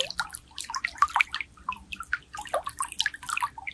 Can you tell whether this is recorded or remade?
remade